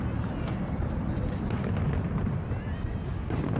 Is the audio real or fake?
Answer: real